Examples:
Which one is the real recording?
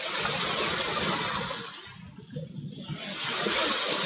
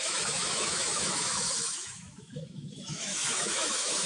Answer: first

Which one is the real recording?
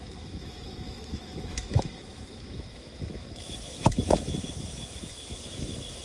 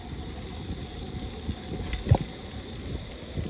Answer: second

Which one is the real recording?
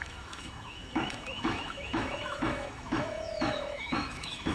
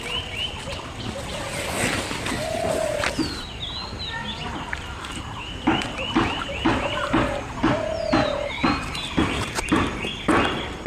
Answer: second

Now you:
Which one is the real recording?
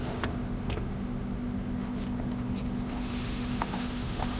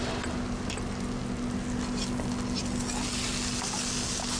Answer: second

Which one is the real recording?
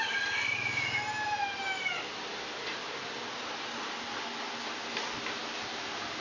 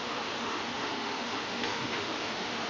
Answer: first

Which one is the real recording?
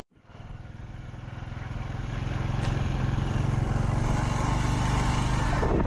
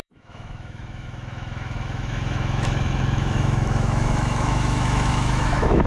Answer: first